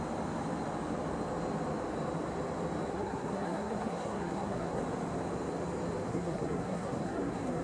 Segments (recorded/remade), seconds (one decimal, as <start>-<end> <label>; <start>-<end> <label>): 0.0-2.9 recorded; 2.9-4.8 remade; 4.8-6.1 recorded; 6.1-7.6 remade